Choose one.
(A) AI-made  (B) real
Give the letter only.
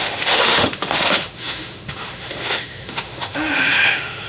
A